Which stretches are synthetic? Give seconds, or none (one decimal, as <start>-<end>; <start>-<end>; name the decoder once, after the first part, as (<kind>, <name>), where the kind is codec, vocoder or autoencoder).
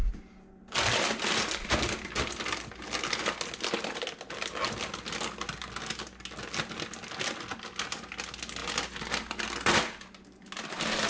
none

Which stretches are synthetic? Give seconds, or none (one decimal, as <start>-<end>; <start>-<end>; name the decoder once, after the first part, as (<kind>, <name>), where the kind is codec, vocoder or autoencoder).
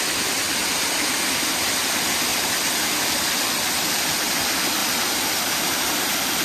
4.8-6.4 (vocoder, BigVGAN v2)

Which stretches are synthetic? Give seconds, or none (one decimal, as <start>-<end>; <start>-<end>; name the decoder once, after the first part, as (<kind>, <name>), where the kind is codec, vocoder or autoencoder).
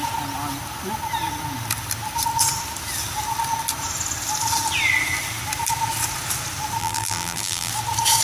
6.8-7.7 (vocoder, BigVGAN v2)